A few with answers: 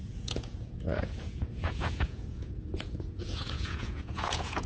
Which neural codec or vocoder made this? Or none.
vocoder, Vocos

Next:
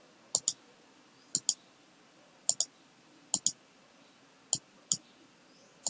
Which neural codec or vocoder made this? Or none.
none